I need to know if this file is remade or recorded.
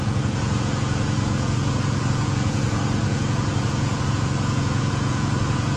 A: remade